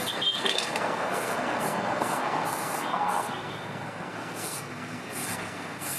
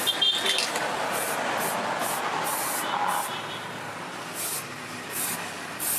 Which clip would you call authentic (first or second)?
second